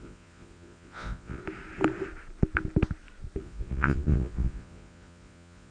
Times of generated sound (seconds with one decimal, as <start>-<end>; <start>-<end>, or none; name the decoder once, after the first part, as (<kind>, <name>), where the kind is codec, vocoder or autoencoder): 0.0-1.4 (vocoder, Vocos); 3.4-5.7